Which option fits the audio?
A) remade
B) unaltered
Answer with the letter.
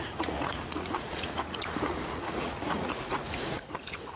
A